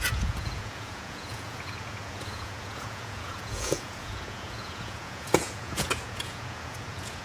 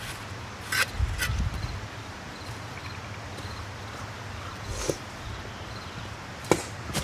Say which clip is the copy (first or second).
first